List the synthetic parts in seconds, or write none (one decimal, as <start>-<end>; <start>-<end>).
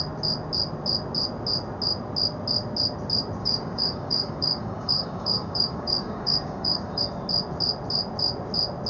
3.4-7.0